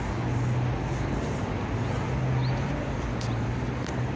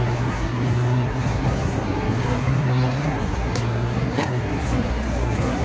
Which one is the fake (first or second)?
second